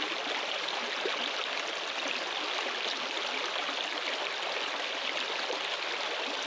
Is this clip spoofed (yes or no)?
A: no